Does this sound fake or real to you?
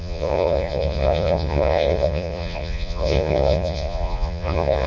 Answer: fake